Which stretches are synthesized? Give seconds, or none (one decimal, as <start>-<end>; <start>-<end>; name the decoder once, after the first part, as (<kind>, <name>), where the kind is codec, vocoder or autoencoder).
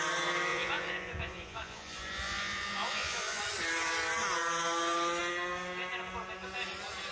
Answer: 0.5-3.4 (vocoder, Vocos)